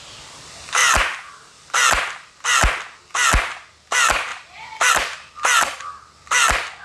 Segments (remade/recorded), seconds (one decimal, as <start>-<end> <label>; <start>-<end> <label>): 0.0-4.3 recorded; 4.3-4.9 remade; 4.9-6.8 recorded